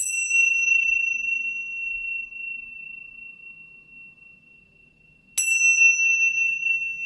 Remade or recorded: recorded